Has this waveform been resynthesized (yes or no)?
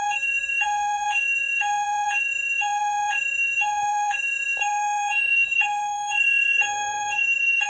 yes